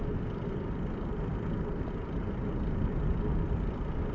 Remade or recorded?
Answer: recorded